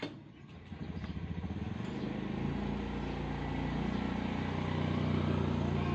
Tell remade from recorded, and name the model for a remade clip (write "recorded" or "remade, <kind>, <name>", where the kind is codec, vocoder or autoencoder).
recorded